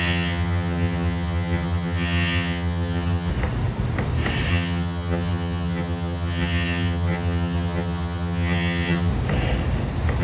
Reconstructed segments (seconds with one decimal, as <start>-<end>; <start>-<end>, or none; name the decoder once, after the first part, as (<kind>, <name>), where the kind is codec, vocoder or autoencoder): 0.0-3.3 (vocoder, HiFi-GAN); 4.5-9.1